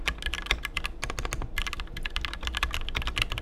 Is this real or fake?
real